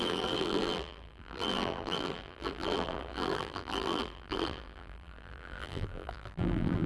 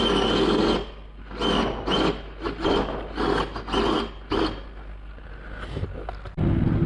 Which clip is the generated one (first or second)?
first